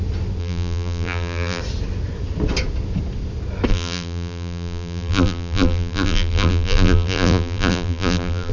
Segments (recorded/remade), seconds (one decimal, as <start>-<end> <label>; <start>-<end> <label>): 0.0-0.4 recorded; 0.4-1.6 remade; 1.6-3.7 recorded; 3.7-8.5 remade